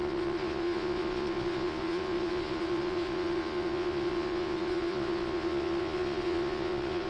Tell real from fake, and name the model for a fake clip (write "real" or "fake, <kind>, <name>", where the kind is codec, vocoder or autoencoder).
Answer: fake, vocoder, Vocos